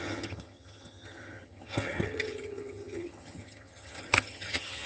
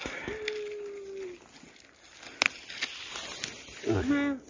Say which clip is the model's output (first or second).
first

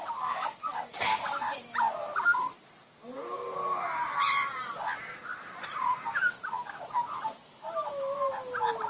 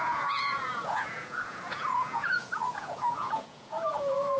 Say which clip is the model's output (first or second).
second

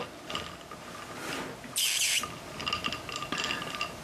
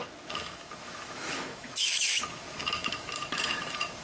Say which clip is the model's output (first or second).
second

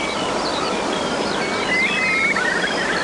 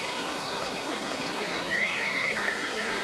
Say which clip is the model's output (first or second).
second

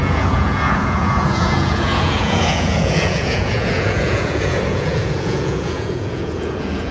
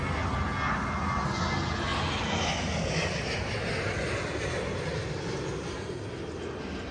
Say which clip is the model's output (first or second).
first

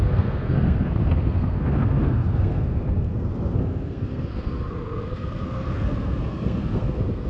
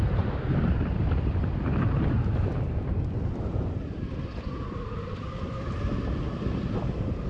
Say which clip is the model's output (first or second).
first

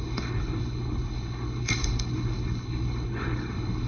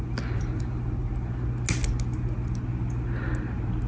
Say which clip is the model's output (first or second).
first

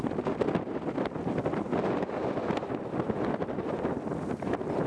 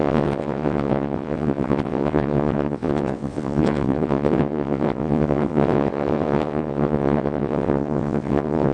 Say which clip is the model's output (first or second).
second